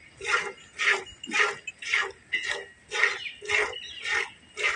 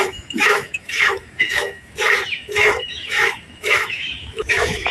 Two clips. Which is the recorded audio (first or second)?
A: first